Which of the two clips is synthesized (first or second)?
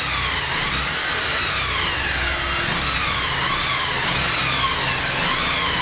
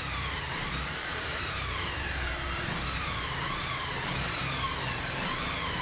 second